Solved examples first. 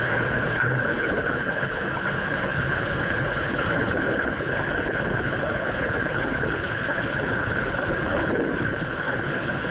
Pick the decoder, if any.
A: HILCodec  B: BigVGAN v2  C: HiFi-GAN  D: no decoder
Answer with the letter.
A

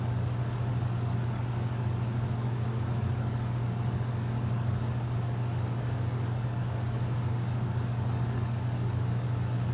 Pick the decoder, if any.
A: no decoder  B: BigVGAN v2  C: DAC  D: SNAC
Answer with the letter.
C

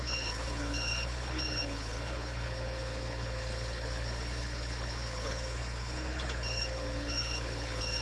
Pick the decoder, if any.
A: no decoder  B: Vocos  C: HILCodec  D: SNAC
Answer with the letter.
C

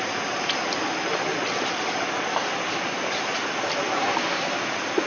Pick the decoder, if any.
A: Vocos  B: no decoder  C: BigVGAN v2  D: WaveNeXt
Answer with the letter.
B